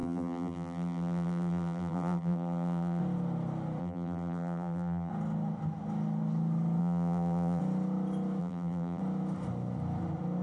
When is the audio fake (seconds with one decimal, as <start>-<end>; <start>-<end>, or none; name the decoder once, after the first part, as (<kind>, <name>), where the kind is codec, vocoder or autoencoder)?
0.0-3.0 (vocoder, BigVGAN v2); 3.8-5.1; 6.8-7.6; 8.4-9.0